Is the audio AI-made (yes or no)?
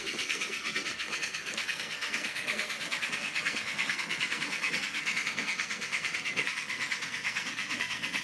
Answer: yes